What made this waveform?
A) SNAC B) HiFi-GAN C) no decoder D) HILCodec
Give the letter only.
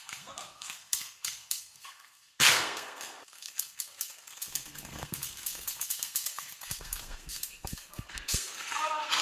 A